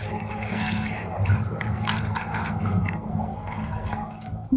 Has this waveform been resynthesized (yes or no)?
yes